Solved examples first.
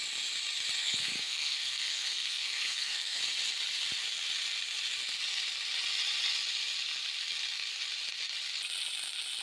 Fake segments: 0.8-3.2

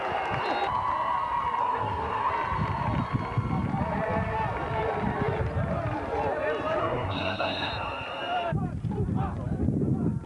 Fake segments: 1.6-2.3; 6.8-7.7

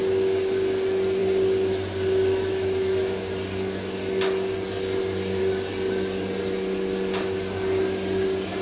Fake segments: none

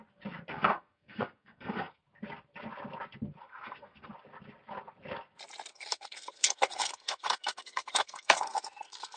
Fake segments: 0.5-2.0; 3.4-4.1; 5.7-9.2

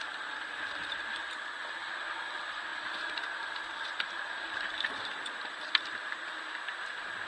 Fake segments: none

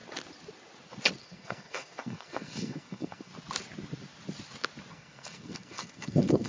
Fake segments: 1.2-3.3; 4.9-6.5

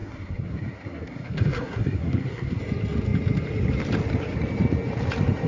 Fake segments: 0.0-2.6